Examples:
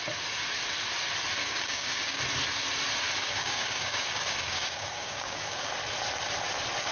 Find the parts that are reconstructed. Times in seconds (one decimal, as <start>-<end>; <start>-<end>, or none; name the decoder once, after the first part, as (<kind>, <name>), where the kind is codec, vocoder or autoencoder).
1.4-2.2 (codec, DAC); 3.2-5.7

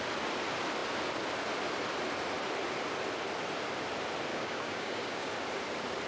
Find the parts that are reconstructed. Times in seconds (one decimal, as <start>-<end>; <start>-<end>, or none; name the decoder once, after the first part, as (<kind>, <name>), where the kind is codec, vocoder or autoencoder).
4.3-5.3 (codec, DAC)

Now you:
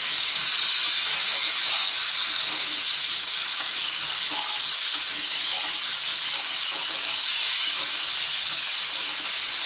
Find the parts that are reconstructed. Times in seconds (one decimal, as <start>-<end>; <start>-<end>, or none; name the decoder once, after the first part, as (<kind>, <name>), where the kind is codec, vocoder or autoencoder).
0.0-9.7 (codec, DAC)

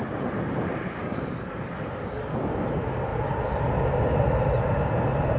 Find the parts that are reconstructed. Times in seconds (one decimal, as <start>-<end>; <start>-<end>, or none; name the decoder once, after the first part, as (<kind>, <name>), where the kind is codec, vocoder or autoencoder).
1.0-1.7 (codec, DAC)

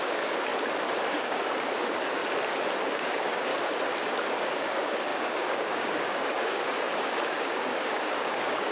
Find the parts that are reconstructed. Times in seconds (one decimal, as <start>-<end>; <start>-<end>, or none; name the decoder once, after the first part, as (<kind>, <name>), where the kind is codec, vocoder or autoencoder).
0.0-0.5 (codec, DAC); 1.1-2.2; 2.8-3.5; 4.3-8.7

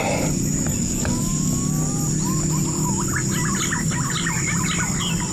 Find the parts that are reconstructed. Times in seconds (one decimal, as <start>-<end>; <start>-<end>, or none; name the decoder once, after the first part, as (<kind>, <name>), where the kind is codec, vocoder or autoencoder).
0.8-1.7 (codec, DAC)

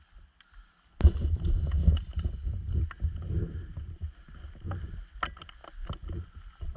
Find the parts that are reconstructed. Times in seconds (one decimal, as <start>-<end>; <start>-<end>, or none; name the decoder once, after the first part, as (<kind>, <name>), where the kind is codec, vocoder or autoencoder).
none